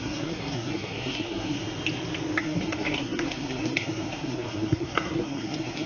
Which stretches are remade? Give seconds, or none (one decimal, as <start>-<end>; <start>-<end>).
0.0-1.6; 2.4-5.9